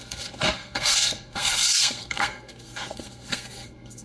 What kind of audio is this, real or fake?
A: fake